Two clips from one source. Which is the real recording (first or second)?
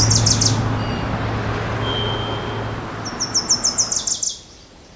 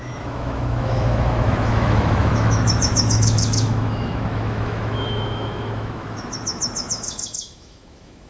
first